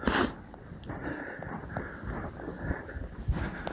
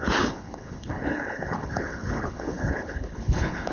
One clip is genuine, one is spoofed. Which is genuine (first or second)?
first